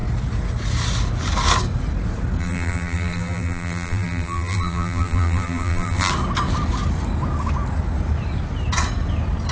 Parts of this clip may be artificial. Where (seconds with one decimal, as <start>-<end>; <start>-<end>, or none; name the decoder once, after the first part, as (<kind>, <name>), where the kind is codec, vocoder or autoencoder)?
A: 2.4-6.1 (vocoder, BigVGAN v2)